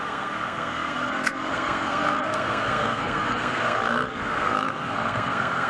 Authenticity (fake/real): fake